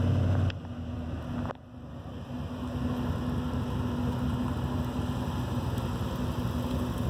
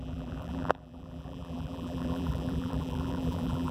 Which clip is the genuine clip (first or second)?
first